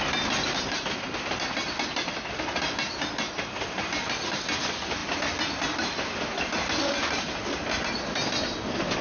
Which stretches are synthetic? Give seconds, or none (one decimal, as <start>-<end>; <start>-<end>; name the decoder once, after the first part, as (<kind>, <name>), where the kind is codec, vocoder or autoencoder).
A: none